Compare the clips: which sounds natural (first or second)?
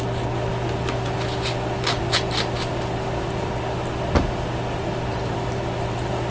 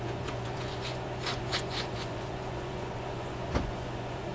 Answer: first